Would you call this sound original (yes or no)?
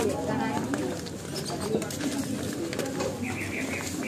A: yes